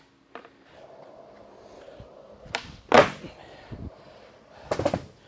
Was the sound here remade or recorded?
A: recorded